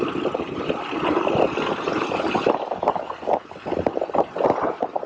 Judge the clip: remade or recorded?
recorded